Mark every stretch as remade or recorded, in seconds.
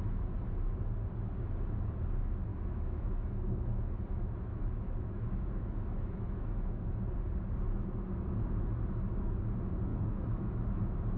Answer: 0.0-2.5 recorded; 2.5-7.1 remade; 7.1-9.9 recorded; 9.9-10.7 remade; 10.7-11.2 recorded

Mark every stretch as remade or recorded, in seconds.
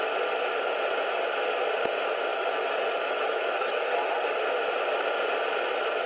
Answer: 0.0-2.3 recorded; 2.3-4.1 remade; 4.1-6.1 recorded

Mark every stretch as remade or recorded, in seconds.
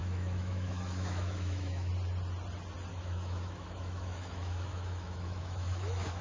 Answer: 0.0-1.9 remade; 1.9-2.9 recorded; 2.9-6.2 remade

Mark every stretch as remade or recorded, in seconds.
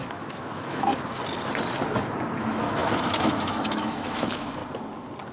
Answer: 0.0-0.9 remade; 0.9-2.4 recorded; 2.4-4.6 remade; 4.6-5.3 recorded